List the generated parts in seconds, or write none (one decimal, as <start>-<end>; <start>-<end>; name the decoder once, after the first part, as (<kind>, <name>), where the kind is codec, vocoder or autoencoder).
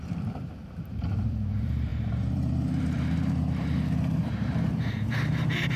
0.0-5.8 (vocoder, BigVGAN v2)